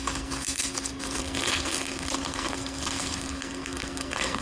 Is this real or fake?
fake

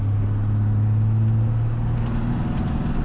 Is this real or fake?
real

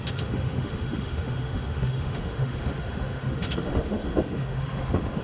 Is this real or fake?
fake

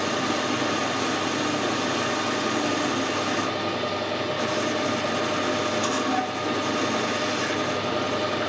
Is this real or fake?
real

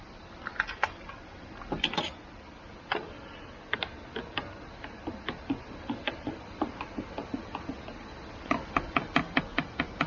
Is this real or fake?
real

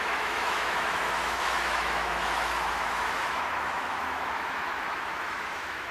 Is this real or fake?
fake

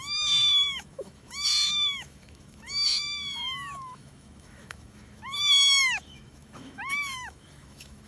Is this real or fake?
fake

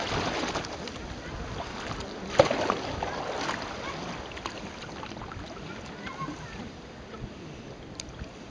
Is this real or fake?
real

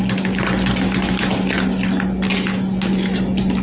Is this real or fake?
real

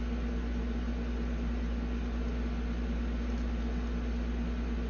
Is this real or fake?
real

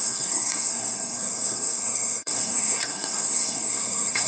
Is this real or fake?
fake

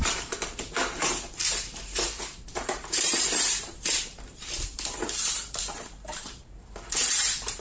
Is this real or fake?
fake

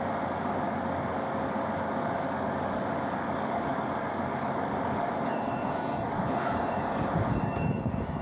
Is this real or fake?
fake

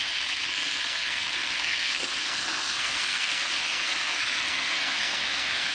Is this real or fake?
fake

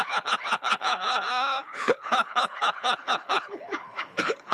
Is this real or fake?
fake